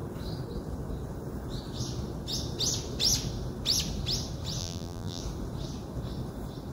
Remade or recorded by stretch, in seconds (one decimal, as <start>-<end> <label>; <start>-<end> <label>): 0.0-4.6 recorded; 4.6-5.2 remade; 5.2-6.7 recorded